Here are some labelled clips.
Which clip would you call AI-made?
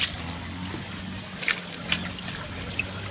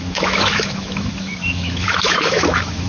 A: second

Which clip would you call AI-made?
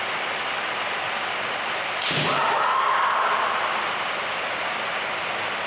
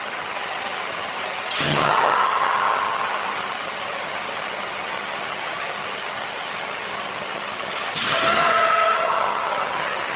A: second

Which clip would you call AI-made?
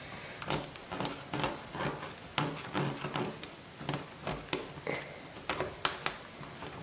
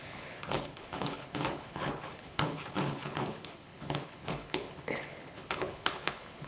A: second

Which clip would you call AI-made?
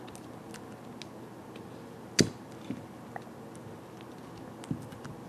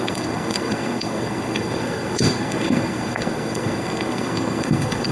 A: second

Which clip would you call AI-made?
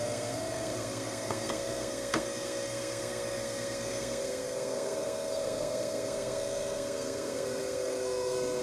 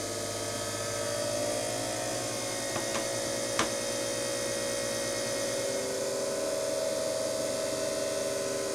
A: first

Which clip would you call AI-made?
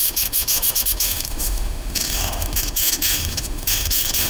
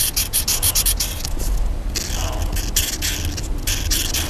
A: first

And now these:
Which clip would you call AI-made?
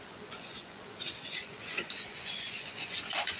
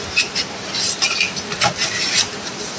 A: first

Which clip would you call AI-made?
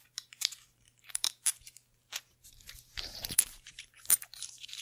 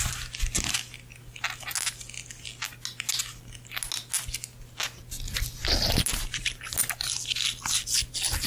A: first